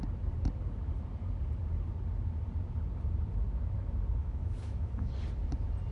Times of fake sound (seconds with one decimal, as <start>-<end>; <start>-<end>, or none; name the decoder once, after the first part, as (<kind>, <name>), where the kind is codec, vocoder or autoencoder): 4.2-5.1 (autoencoder, DAC-VAE)